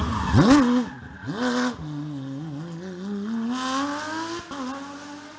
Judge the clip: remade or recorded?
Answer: recorded